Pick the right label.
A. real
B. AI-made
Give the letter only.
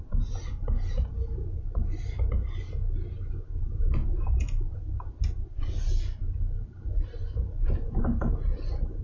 A